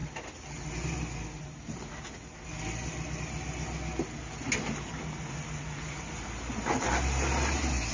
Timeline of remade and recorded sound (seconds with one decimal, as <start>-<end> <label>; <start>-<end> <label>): 0.0-7.9 recorded